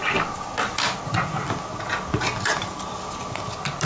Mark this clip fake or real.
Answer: real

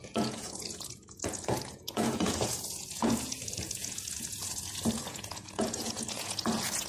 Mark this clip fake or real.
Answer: fake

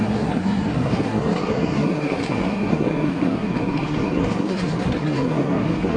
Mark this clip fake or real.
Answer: fake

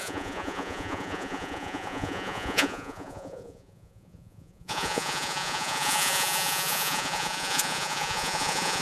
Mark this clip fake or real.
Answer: fake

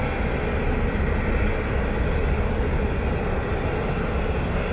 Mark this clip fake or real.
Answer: real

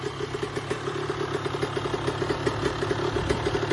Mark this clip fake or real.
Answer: real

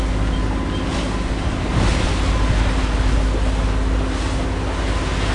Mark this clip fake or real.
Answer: real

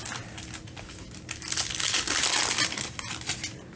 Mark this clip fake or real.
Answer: real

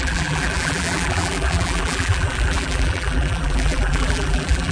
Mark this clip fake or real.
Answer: fake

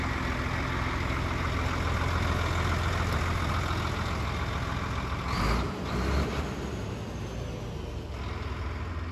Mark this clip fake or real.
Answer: real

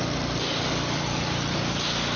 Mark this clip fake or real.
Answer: real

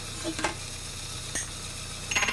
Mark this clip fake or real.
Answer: real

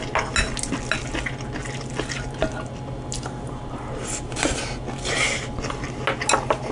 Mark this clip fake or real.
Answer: real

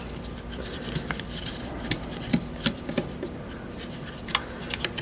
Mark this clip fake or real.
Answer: fake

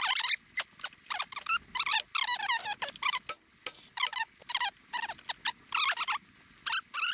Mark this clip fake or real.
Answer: real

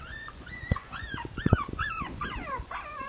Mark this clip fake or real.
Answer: fake